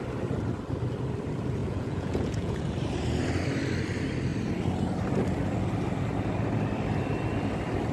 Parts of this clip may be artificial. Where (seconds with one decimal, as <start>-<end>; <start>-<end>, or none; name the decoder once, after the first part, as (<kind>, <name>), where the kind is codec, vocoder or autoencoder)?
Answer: 1.6-2.6 (vocoder, Vocos)